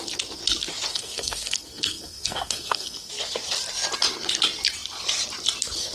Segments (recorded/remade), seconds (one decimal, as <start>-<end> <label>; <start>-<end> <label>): 0.0-0.9 recorded; 0.9-3.1 remade; 3.1-5.9 recorded